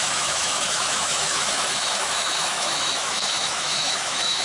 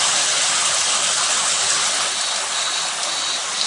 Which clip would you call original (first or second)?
second